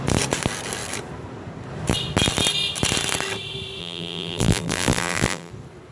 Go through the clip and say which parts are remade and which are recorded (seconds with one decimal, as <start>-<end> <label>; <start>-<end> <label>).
0.0-3.8 recorded; 3.8-5.5 remade; 5.5-5.9 recorded

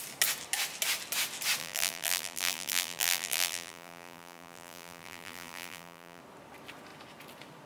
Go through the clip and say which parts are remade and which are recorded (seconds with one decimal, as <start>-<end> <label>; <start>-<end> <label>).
0.0-1.6 recorded; 1.6-6.2 remade; 6.2-7.7 recorded

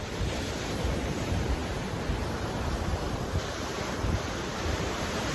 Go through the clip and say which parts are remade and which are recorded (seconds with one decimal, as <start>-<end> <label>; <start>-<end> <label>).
0.0-5.3 remade

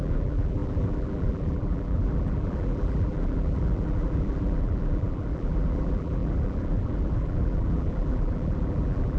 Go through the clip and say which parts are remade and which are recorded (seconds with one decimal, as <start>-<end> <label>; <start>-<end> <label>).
0.0-9.2 remade

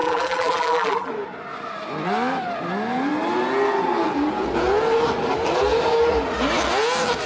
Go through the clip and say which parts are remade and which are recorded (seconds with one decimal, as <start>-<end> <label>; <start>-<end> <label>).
0.0-1.1 remade; 1.1-7.3 recorded

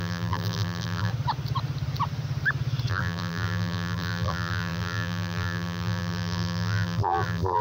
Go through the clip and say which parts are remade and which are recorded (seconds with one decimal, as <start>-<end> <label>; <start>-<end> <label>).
0.0-1.1 remade; 1.1-2.9 recorded; 2.9-7.6 remade

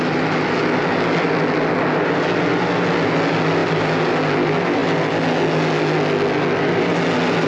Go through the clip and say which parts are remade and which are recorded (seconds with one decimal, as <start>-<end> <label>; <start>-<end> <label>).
0.0-7.5 recorded